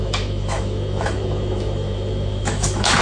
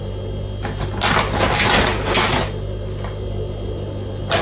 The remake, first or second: first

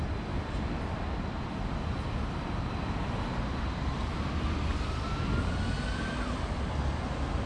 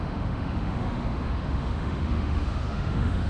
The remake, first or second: second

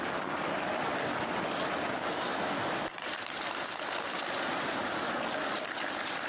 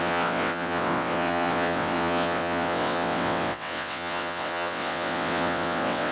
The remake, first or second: second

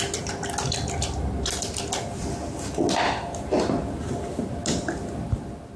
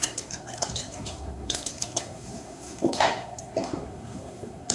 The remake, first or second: second